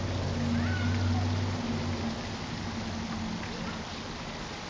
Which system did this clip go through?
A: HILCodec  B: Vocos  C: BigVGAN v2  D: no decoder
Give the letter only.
D